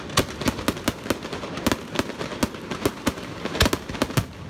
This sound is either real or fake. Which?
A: real